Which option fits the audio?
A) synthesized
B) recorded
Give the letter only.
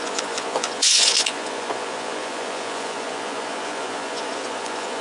A